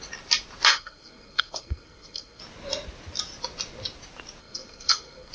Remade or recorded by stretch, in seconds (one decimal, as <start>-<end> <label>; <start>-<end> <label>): 0.0-0.7 recorded; 0.7-2.4 remade; 2.4-4.4 recorded; 4.4-5.3 remade